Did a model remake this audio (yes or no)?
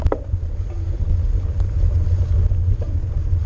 no